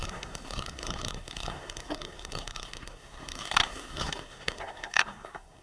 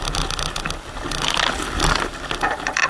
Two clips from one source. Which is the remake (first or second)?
first